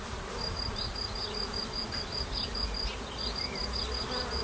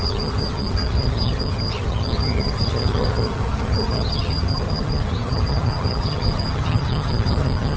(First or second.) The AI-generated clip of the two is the second